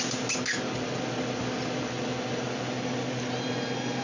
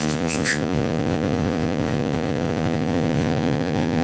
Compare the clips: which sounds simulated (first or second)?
second